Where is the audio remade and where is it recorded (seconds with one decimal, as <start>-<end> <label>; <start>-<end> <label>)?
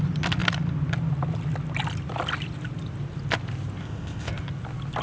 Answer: 0.0-3.8 recorded; 3.8-4.3 remade; 4.3-5.0 recorded